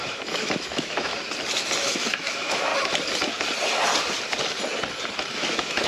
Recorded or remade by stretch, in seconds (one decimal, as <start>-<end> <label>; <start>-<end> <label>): 0.0-1.1 remade; 1.1-1.8 recorded; 1.8-2.7 remade; 2.7-5.3 recorded; 5.3-5.9 remade